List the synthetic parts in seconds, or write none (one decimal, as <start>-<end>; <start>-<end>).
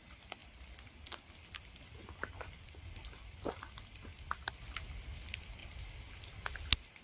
0.4-4.6; 5.6-6.6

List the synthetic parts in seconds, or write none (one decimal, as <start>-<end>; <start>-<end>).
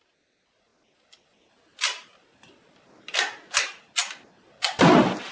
none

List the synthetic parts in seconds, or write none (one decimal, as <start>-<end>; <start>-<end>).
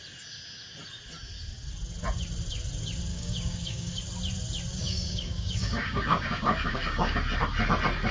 3.1-4.0; 4.8-7.2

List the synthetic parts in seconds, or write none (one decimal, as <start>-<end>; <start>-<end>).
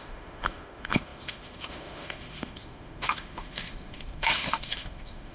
0.0-5.3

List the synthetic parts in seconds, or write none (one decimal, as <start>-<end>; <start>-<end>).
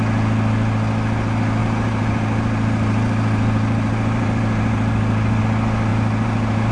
1.6-5.4; 5.9-6.7